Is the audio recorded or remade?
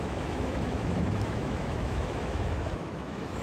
remade